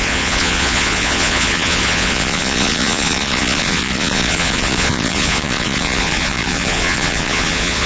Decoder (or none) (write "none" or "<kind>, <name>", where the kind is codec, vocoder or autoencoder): vocoder, Vocos